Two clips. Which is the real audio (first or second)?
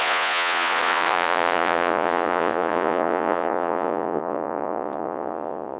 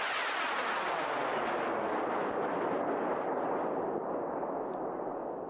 second